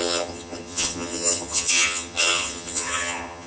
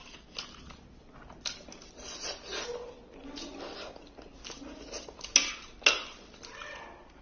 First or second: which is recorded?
second